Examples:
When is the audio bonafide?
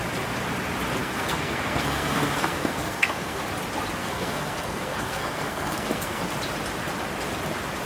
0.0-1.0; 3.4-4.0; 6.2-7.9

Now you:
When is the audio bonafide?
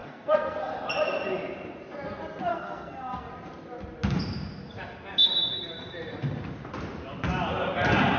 0.7-2.5; 3.3-8.2